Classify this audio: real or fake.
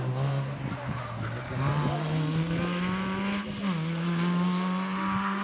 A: real